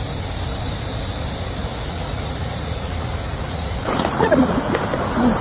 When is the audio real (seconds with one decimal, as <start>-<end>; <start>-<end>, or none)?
0.0-1.6; 4.8-5.4